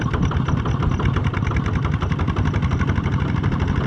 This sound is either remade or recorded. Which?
recorded